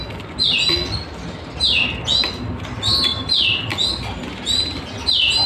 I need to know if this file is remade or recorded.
recorded